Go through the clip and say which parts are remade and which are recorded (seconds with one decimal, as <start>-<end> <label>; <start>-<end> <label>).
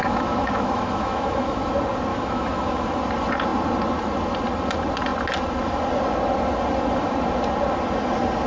0.0-1.7 remade; 1.7-2.1 recorded; 2.1-3.0 remade; 3.0-8.5 recorded